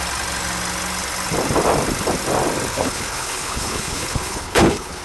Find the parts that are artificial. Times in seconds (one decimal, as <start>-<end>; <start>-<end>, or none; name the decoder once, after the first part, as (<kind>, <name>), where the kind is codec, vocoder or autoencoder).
2.7-5.0 (codec, HILCodec)